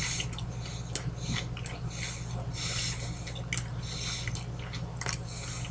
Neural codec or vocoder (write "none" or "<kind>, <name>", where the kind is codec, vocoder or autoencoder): none